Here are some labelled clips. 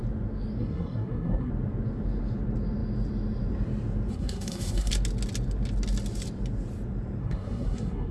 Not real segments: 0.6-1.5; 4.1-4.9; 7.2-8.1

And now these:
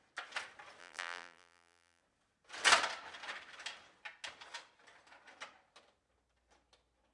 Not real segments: 0.8-2.0

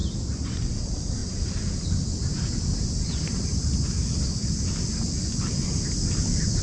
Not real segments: 0.6-1.2; 2.5-4.4; 6.1-6.6

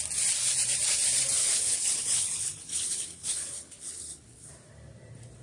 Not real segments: 1.4-4.5